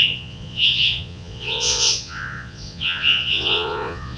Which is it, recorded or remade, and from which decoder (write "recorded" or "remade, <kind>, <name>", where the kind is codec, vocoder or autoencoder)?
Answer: remade, vocoder, Vocos